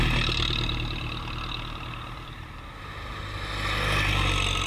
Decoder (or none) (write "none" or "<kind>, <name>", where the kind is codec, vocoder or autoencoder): none